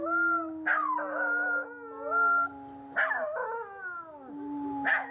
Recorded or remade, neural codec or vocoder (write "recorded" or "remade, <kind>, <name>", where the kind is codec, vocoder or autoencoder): recorded